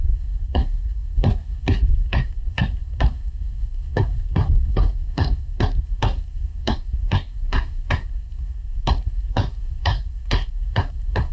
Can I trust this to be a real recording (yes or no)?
no